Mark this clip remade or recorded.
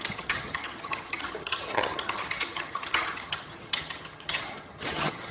remade